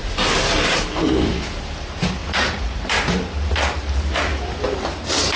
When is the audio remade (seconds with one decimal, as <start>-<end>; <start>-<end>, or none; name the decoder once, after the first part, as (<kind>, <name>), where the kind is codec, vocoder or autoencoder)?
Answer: 2.2-2.8 (vocoder, Vocos)